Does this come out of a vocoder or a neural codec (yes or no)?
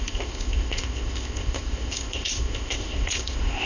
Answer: yes